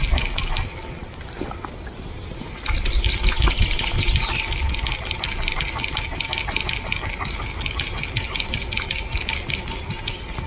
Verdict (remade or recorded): recorded